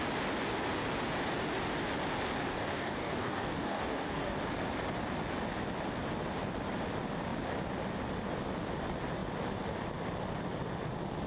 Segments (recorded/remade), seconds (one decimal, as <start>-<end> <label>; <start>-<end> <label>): 0.0-2.5 recorded; 2.5-4.4 remade; 4.4-11.3 recorded